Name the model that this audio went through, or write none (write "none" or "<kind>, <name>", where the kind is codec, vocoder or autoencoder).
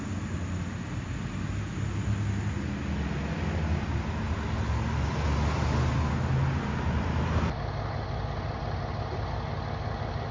none